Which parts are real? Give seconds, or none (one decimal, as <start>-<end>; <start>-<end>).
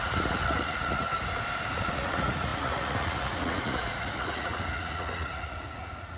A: 1.1-1.7